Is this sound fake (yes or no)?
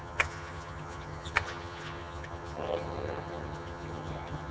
yes